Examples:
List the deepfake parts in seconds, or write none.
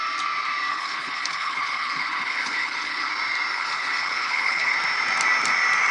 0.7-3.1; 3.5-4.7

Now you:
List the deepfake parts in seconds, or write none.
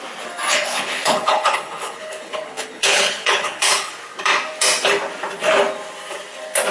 0.5-3.9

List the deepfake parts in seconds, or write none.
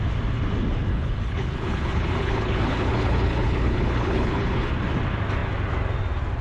0.9-4.7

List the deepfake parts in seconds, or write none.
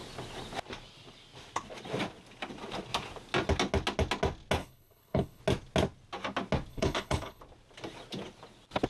4.6-5.4; 6.7-7.4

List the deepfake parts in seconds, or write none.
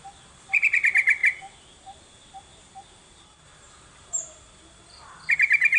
none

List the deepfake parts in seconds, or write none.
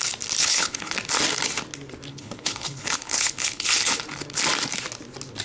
0.4-0.9; 2.1-4.0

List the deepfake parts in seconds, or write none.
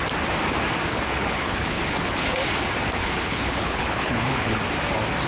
0.9-2.3; 3.0-4.6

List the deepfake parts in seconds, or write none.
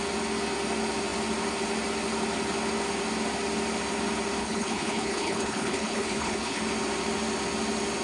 4.4-6.6